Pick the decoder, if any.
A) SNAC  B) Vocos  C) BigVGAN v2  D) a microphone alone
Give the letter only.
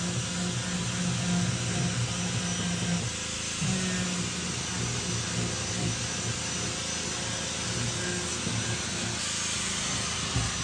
D